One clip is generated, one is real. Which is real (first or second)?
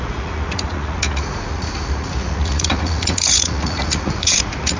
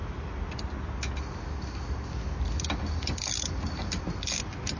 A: second